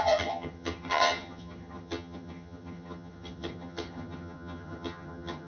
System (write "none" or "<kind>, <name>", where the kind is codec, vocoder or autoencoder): vocoder, HiFi-GAN